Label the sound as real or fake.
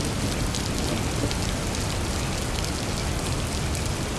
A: real